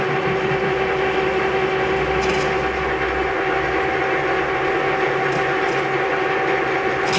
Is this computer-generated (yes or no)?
no